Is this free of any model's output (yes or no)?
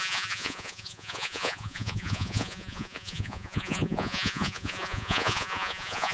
no